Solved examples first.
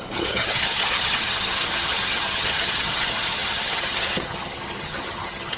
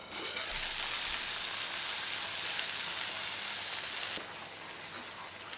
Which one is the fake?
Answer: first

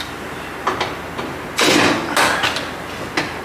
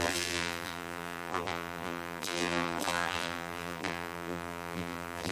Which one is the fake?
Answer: second